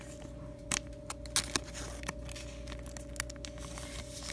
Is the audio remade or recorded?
recorded